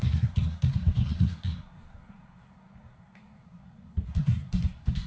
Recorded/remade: remade